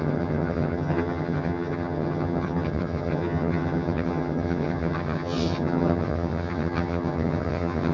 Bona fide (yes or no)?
no